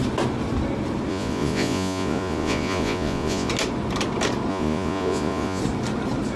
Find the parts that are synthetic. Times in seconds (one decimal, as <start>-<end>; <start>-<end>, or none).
1.1-3.5; 4.5-5.6